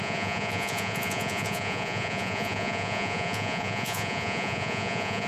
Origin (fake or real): fake